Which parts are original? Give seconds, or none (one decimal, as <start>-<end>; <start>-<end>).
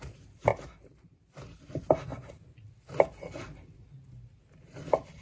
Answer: 0.0-5.2